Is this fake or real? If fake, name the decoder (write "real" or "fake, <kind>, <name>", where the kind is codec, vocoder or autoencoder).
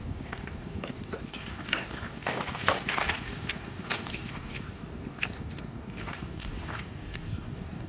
fake, codec, DAC